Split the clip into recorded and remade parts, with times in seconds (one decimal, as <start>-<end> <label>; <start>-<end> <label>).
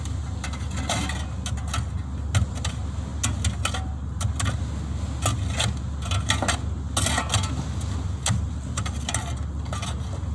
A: 0.0-10.3 recorded